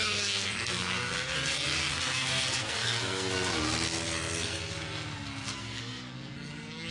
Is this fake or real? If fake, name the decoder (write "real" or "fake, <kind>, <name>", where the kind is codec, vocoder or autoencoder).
fake, codec, SNAC